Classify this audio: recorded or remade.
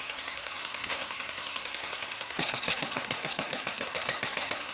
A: remade